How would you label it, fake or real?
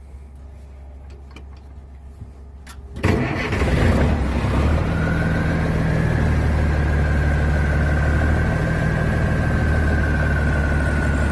real